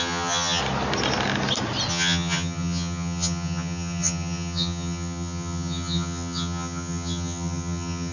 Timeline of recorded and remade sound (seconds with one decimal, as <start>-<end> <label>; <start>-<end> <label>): 0.0-0.6 remade; 0.6-1.9 recorded; 1.9-8.1 remade